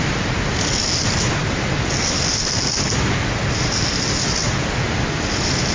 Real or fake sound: real